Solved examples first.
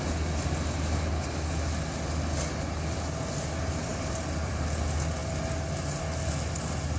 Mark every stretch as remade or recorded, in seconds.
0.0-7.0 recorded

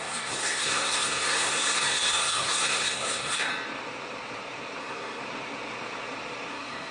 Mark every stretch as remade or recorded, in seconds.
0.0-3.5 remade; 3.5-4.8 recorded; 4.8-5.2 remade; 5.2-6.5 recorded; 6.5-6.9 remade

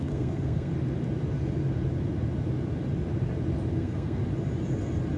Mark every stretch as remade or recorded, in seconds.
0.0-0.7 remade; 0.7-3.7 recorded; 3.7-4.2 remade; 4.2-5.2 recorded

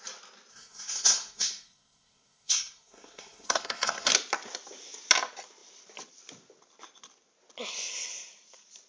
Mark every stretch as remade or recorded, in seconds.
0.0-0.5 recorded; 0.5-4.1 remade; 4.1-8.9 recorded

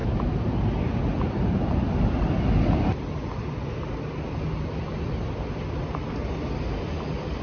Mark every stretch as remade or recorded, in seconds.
0.0-7.4 recorded

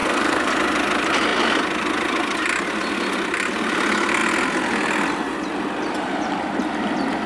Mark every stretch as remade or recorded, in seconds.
0.0-0.5 remade; 0.5-7.3 recorded